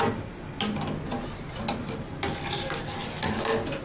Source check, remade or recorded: recorded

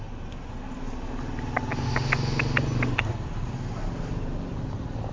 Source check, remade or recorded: recorded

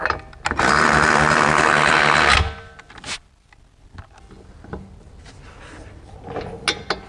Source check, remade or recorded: recorded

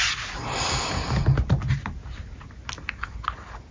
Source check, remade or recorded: recorded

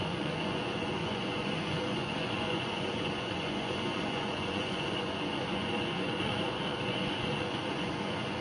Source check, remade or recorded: remade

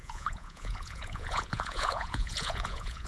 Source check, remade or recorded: remade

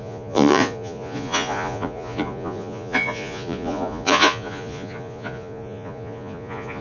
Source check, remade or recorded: remade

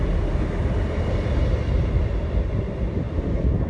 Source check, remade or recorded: recorded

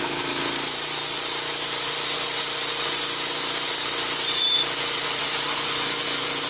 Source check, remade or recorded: recorded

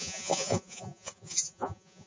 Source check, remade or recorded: remade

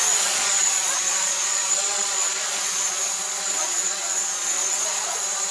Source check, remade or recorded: remade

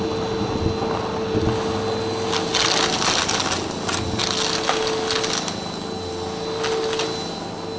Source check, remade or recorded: recorded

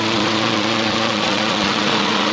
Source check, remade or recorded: remade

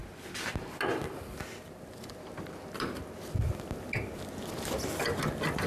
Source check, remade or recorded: recorded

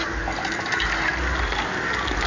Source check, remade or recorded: recorded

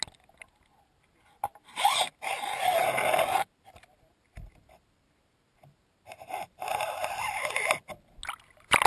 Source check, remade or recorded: recorded